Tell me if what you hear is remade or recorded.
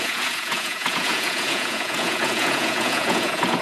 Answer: remade